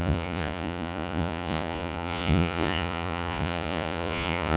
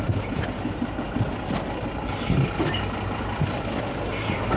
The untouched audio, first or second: second